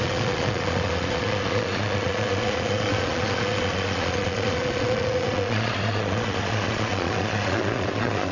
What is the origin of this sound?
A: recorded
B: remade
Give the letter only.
B